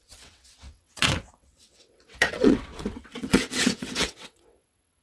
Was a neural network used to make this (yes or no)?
yes